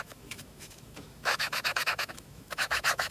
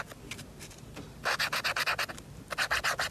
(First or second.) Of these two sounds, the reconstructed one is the first